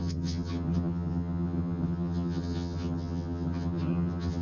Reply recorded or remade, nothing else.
remade